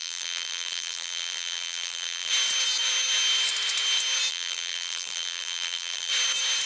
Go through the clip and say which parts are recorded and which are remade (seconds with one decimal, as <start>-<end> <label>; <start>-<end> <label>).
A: 0.0-2.3 remade; 2.3-4.3 recorded; 4.3-6.1 remade; 6.1-6.7 recorded